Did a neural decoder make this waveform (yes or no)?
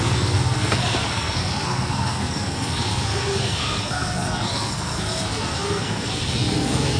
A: yes